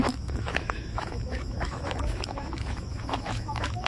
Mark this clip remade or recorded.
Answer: remade